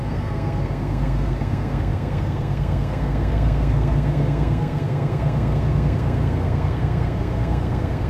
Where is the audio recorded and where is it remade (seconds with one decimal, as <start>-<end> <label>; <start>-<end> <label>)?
0.0-8.1 remade